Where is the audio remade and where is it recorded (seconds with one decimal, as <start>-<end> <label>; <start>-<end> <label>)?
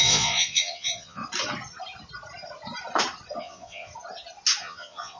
0.0-1.2 remade; 1.2-3.4 recorded; 3.4-3.9 remade; 3.9-4.6 recorded; 4.6-5.2 remade